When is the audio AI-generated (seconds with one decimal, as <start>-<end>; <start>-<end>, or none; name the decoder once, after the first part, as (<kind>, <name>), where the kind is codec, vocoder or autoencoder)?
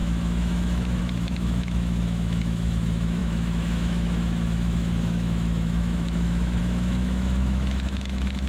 0.0-8.5 (autoencoder, DAC-VAE)